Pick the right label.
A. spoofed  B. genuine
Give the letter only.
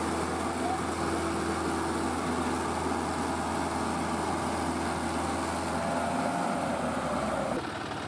B